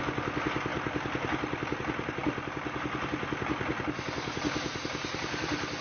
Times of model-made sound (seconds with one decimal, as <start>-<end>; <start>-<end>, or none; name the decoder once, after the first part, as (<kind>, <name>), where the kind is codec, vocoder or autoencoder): none